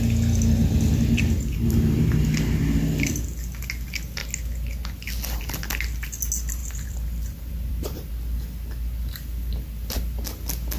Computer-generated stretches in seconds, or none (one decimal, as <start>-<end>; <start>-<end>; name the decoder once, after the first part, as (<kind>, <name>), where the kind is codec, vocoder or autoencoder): 6.6-8.1 (vocoder, BigVGAN v2)